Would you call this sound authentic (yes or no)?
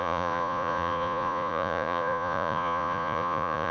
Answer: no